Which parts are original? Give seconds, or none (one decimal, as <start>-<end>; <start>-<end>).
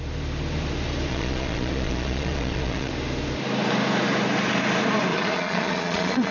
0.0-1.1; 2.9-5.1